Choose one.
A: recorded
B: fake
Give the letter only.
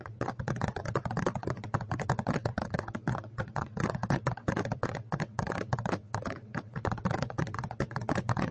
B